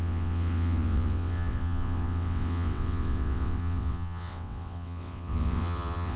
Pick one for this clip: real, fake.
fake